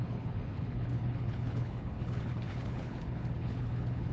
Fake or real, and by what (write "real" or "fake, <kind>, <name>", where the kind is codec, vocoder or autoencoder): fake, codec, HILCodec